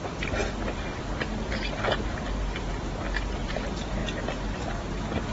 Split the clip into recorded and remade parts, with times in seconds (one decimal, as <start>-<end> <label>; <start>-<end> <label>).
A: 0.0-5.3 recorded

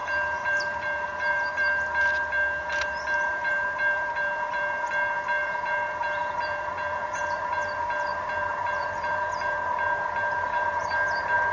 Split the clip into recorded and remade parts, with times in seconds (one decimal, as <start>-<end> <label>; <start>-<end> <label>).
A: 0.0-11.5 remade

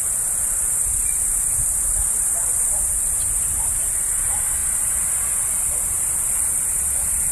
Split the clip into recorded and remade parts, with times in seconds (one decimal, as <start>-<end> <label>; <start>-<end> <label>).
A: 0.0-2.5 recorded; 2.5-3.3 remade; 3.3-7.3 recorded

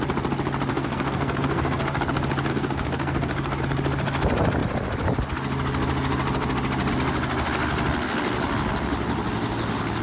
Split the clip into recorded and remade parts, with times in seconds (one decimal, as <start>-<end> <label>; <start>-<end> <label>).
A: 0.0-0.7 recorded; 0.7-2.0 remade; 2.0-2.5 recorded; 2.5-3.6 remade; 3.6-10.0 recorded